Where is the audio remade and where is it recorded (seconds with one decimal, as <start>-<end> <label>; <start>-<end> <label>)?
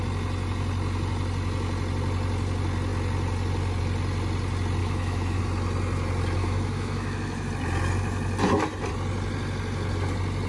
0.0-4.8 recorded; 4.8-5.4 remade; 5.4-6.4 recorded; 6.4-7.5 remade; 7.5-10.5 recorded